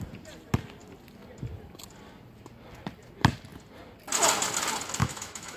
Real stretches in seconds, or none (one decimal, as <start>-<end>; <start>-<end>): 0.0-5.0